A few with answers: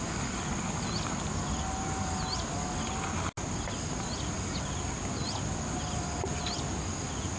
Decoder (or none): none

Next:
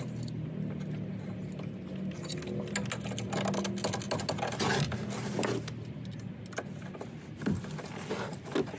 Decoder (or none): none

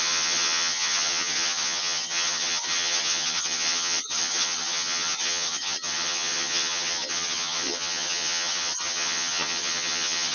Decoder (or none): vocoder, HiFi-GAN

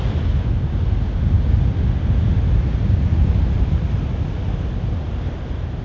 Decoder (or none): none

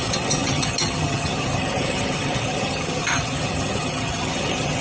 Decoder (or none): vocoder, HiFi-GAN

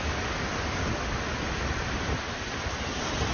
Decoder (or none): none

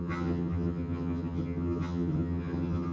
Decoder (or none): vocoder, HiFi-GAN